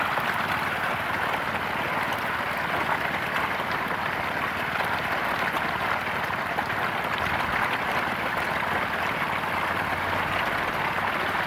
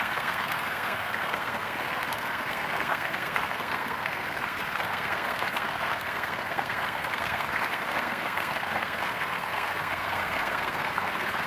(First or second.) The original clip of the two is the first